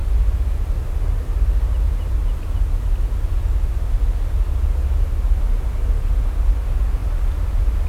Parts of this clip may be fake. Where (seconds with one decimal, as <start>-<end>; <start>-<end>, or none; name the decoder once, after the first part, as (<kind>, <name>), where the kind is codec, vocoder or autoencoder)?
none